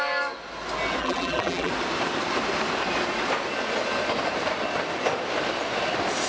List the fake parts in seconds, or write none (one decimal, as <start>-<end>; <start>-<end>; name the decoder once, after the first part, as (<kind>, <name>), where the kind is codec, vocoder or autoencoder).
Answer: 1.0-1.7 (vocoder, BigVGAN v2)